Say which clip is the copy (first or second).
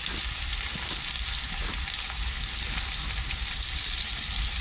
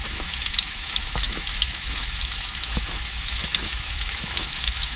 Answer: second